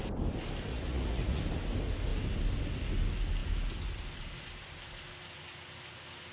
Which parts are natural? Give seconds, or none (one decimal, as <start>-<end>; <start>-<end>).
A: 0.0-0.7; 1.4-6.3